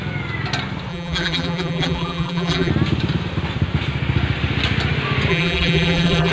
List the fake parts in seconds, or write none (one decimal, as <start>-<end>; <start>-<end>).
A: 0.9-2.7; 5.3-6.3